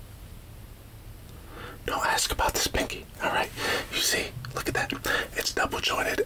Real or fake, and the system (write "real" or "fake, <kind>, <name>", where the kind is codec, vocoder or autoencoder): real